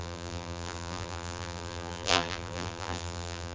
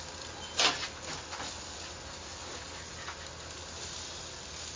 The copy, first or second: first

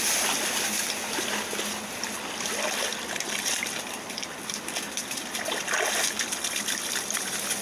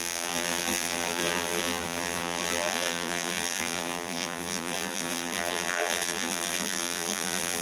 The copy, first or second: second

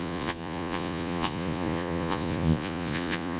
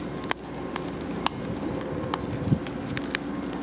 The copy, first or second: first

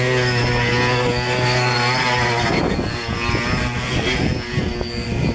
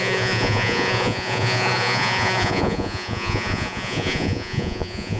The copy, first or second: second